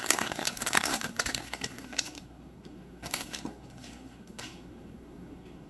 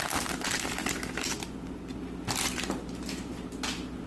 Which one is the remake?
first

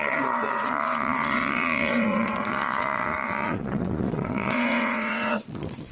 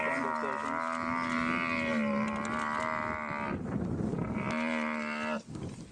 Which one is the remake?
first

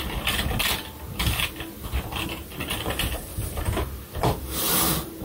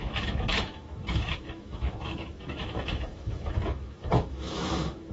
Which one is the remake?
second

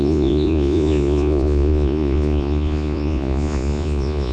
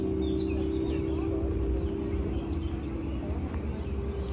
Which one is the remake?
first